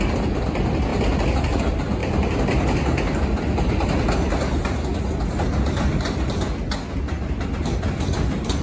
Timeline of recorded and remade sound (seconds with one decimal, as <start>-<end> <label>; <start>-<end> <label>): 0.0-2.0 recorded; 2.0-3.4 remade; 3.4-8.6 recorded